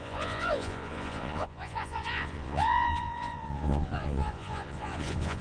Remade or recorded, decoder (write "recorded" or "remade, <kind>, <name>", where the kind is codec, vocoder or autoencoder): remade, vocoder, Vocos